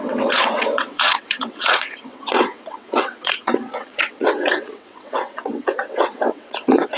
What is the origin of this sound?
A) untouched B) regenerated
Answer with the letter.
B